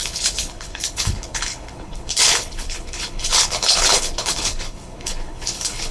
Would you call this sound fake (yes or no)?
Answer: yes